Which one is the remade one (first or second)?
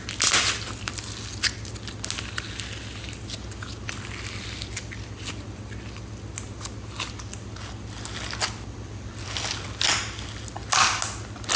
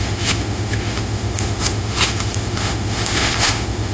second